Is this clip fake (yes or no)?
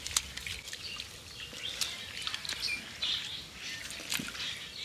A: no